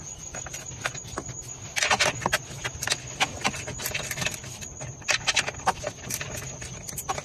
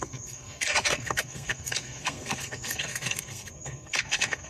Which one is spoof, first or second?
second